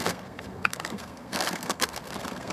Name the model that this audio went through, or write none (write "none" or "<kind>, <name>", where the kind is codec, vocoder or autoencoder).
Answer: codec, SNAC